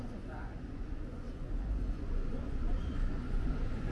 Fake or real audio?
fake